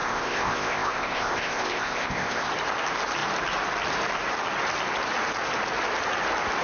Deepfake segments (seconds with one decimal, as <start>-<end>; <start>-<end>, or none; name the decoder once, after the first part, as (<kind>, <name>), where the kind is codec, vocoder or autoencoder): 0.0-2.5 (codec, ZipCodec)